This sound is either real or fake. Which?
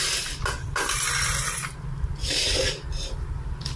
real